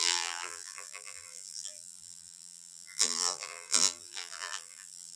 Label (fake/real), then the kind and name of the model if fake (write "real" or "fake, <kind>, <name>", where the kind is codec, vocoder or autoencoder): fake, vocoder, BigVGAN v2